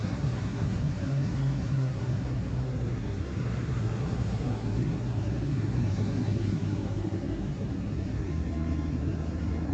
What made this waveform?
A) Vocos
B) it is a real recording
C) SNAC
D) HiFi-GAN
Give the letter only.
C